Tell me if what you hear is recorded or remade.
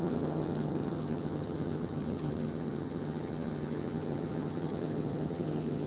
remade